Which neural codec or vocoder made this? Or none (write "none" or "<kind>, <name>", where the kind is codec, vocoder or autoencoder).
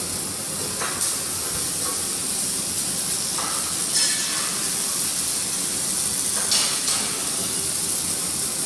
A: none